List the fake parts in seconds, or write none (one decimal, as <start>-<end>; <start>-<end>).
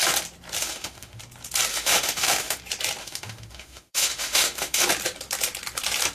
0.6-1.2; 1.7-2.6; 3.0-4.8